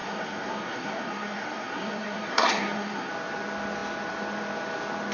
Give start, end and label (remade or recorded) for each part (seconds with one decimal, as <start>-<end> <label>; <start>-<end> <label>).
0.0-3.1 remade; 3.1-5.1 recorded